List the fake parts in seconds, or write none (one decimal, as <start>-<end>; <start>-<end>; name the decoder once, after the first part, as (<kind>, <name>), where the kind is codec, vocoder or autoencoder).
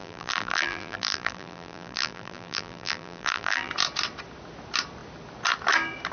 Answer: 0.0-3.7 (vocoder, BigVGAN v2)